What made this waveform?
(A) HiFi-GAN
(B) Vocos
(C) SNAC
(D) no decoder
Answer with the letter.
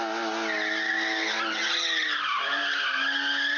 D